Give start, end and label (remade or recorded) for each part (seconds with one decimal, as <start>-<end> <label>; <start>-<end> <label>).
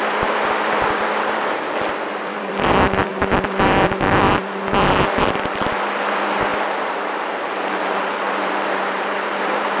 0.0-3.1 remade; 3.1-5.1 recorded; 5.1-9.8 remade